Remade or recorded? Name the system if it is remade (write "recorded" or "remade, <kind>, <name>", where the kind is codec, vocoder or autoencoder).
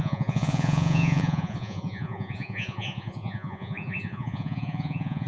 remade, vocoder, Vocos